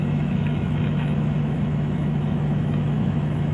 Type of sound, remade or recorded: remade